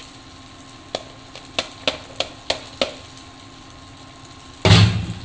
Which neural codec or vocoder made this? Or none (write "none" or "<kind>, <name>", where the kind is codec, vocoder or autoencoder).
none